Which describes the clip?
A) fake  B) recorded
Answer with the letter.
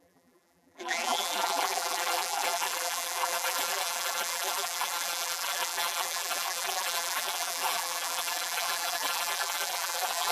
A